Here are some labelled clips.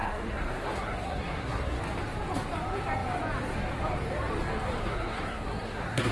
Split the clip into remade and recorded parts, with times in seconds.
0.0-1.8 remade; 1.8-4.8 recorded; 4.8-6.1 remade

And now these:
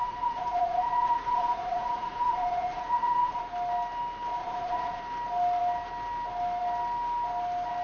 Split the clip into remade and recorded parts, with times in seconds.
0.0-3.4 remade; 3.4-4.4 recorded; 4.4-5.0 remade; 5.0-7.8 recorded

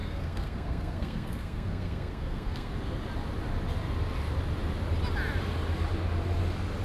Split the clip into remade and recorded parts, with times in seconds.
0.0-2.7 remade; 2.7-6.8 recorded

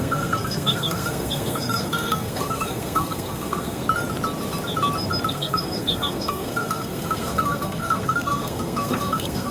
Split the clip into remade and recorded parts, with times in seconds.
0.0-3.8 remade; 3.8-5.3 recorded; 5.3-9.5 remade

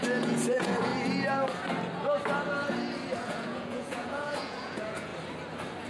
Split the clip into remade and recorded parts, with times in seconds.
0.0-0.9 remade; 0.9-3.2 recorded; 3.2-5.1 remade; 5.1-5.9 recorded